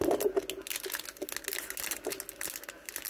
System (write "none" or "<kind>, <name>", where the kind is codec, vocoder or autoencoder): none